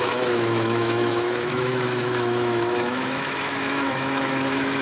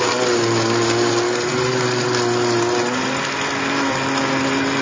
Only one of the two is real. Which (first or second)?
second